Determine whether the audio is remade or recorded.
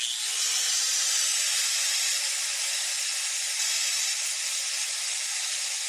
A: recorded